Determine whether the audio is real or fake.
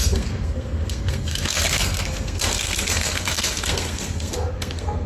fake